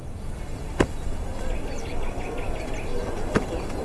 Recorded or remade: recorded